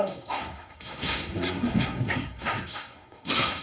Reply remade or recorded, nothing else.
remade